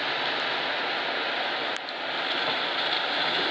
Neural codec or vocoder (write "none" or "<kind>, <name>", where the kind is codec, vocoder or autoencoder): none